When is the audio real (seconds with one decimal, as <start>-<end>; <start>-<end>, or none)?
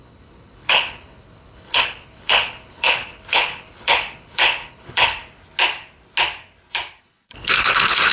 5.2-7.0